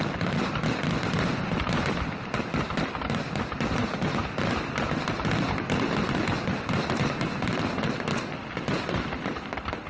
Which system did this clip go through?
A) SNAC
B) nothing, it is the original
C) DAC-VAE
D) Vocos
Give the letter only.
B